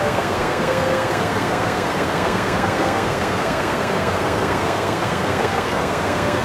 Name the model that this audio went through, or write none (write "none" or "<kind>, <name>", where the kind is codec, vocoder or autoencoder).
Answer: codec, SNAC